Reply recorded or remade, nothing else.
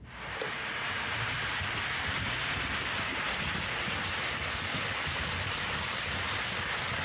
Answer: recorded